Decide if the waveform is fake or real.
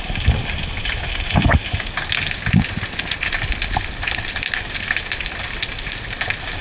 real